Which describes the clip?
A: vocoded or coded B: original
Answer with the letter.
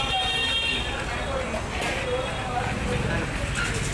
B